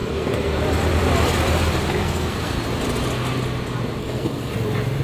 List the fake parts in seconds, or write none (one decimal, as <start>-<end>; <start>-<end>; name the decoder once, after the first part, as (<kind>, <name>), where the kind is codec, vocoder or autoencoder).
0.0-0.6 (codec, SNAC); 2.0-2.6; 4.0-4.5